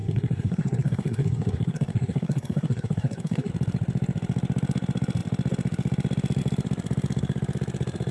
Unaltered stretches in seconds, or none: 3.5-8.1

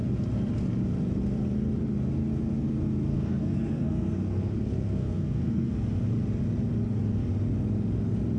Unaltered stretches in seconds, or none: 0.0-3.1; 5.7-8.4

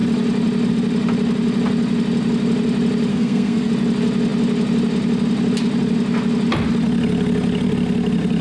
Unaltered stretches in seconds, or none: 0.0-3.1; 3.7-8.4

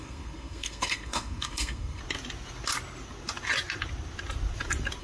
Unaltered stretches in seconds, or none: 2.0-5.0

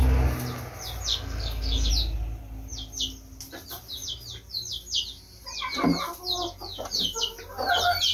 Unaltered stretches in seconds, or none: 0.0-1.1; 1.9-8.1

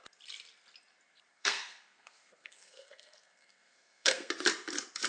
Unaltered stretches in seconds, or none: 0.0-1.3; 4.3-5.1